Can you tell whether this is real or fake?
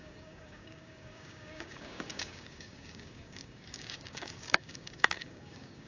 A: fake